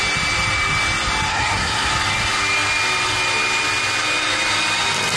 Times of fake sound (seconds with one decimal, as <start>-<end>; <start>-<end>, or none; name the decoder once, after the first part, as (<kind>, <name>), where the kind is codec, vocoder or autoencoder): 1.3-1.9 (codec, SNAC)